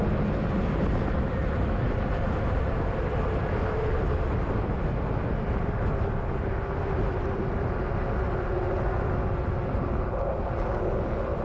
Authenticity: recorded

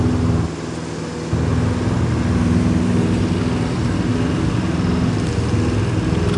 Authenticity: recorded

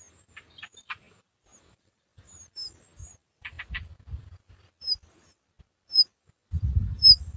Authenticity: recorded